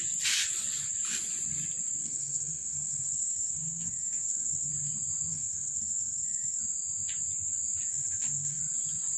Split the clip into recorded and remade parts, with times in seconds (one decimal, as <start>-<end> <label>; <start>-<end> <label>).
0.0-2.0 recorded; 2.0-4.7 remade; 4.7-5.3 recorded; 5.3-6.6 remade; 6.6-7.9 recorded; 7.9-8.6 remade; 8.6-9.2 recorded